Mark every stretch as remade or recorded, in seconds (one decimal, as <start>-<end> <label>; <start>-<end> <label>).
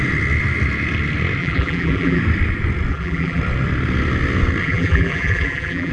0.0-1.4 recorded; 1.4-2.2 remade; 2.2-2.9 recorded; 2.9-3.4 remade; 3.4-4.6 recorded; 4.6-5.9 remade